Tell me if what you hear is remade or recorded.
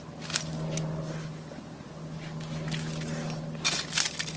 recorded